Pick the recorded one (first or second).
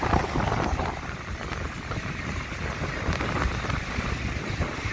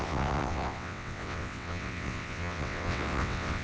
first